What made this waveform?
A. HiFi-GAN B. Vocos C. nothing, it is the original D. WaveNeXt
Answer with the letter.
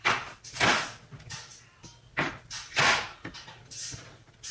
C